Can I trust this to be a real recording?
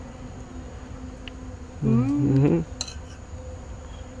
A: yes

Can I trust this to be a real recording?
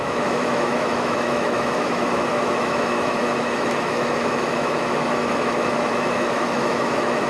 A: no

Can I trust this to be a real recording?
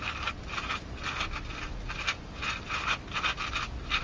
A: yes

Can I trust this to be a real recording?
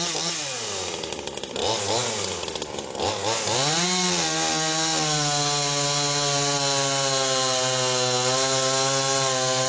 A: yes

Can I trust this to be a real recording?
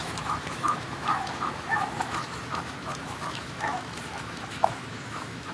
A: no